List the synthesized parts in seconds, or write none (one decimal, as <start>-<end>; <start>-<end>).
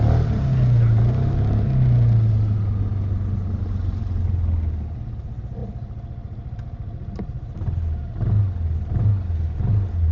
none